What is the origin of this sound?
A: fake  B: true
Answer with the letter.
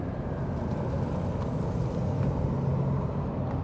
B